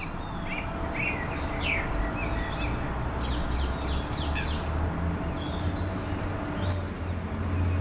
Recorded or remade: recorded